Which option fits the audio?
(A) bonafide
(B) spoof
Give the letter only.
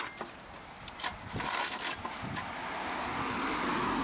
A